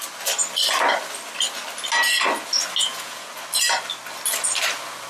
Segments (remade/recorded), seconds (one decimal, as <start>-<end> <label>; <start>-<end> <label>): 0.0-2.8 recorded; 2.8-3.3 remade; 3.3-5.1 recorded